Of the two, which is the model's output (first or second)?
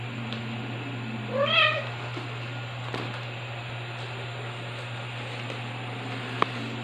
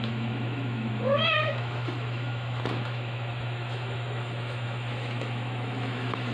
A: second